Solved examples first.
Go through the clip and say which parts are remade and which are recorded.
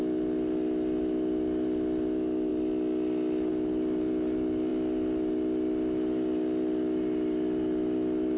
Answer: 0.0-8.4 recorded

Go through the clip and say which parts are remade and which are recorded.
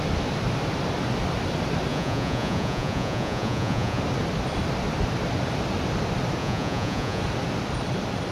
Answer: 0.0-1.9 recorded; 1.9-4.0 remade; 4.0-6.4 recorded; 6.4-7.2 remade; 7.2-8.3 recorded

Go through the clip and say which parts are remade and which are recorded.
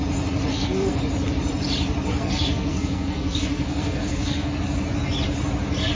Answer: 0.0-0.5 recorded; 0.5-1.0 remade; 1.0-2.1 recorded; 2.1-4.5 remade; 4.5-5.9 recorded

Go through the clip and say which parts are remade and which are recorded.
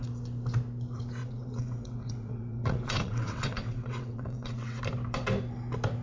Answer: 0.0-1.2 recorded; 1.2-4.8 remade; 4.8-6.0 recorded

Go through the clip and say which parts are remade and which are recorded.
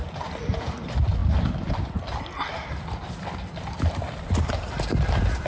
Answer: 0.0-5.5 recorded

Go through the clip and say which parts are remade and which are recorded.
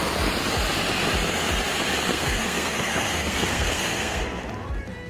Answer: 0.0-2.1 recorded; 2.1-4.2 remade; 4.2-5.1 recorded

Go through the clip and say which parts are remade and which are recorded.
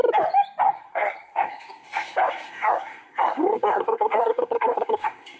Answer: 0.0-0.7 recorded; 0.7-5.4 remade